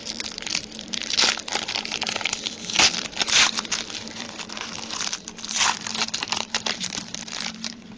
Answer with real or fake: fake